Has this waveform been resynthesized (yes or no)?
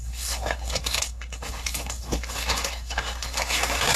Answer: yes